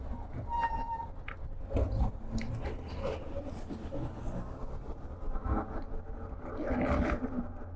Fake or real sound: real